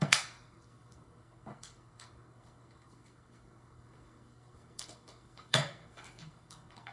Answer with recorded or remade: remade